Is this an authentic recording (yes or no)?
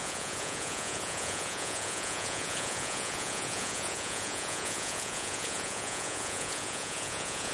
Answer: no